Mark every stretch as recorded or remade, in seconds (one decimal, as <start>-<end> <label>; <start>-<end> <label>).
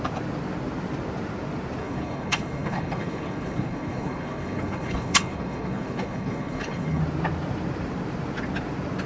0.0-1.8 recorded; 1.8-7.0 remade; 7.0-9.1 recorded